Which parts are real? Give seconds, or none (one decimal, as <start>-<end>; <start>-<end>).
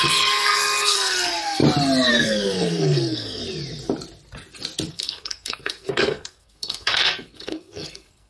1.6-2.1; 3.4-4.9